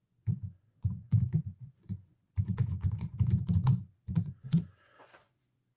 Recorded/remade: remade